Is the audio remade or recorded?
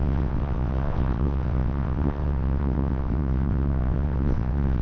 remade